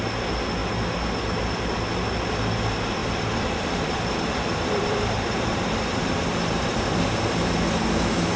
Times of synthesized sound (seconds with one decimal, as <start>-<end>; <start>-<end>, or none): 3.0-7.0